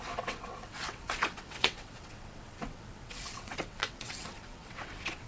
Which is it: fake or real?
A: fake